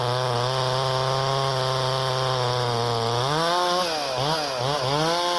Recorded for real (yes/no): yes